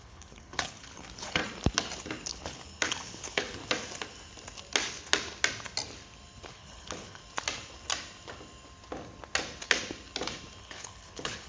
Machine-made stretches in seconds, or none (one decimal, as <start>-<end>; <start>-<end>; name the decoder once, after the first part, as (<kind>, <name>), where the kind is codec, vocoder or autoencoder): 0.0-1.4 (codec, HILCodec); 2.3-3.6; 6.5-7.2; 10.6-11.5